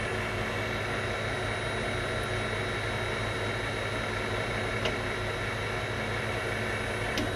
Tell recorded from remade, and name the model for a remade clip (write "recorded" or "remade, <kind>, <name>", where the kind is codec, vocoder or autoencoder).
recorded